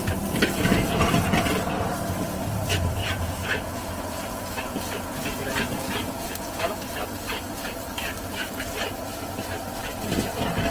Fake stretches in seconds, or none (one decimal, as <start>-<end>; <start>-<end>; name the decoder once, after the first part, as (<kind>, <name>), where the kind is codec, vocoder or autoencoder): 3.0-6.9 (vocoder, Vocos)